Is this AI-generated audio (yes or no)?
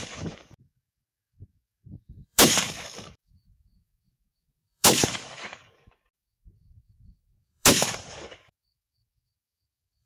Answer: yes